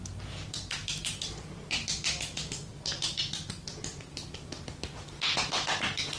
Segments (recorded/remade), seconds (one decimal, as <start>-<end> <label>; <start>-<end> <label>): 0.0-2.7 recorded; 2.7-3.2 remade; 3.2-6.2 recorded